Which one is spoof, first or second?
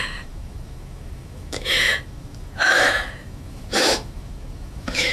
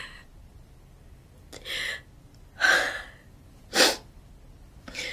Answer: first